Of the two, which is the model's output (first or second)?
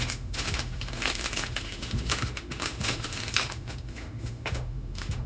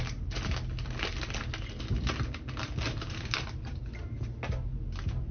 first